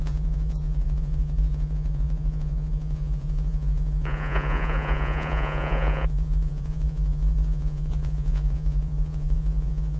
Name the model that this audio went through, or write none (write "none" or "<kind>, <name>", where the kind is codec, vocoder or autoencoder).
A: vocoder, Vocos